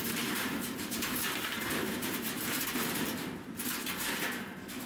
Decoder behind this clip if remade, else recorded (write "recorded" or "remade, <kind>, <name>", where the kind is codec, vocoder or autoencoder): remade, vocoder, BigVGAN v2